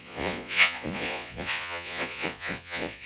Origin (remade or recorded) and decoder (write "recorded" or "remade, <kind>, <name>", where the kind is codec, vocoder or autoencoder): remade, vocoder, Vocos